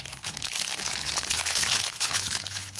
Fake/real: fake